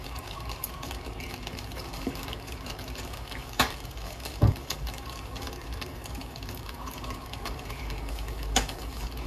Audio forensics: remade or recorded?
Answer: remade